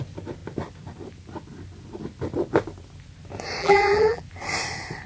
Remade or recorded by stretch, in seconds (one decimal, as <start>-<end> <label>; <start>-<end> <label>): 0.0-3.6 recorded; 3.6-4.2 remade; 4.2-5.1 recorded